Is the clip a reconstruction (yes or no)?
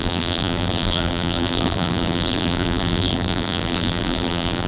yes